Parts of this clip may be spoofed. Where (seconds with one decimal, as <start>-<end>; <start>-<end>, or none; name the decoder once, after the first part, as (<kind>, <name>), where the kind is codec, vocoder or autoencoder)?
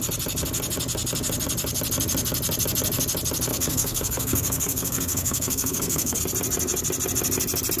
3.5-6.2 (codec, SNAC)